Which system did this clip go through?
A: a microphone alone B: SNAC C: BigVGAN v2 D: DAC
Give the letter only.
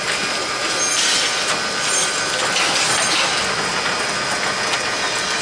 A